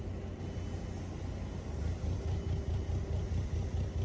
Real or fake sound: real